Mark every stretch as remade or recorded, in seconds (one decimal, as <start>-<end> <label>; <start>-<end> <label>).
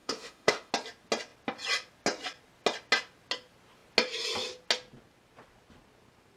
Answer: 0.0-0.7 remade; 0.7-6.4 recorded